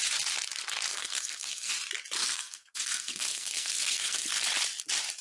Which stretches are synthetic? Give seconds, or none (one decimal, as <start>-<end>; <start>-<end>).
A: 0.9-1.7; 2.2-4.3